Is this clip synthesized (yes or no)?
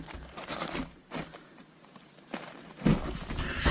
yes